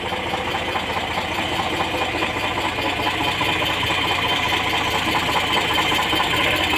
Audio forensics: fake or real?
real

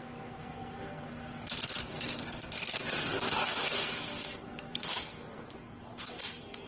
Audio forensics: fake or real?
fake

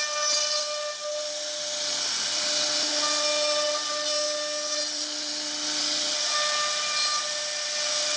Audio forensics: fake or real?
real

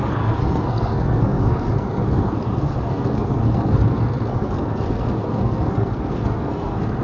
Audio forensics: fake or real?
fake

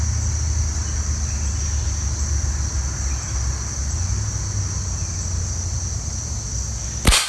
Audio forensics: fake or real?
real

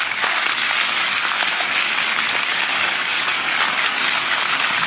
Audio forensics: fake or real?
fake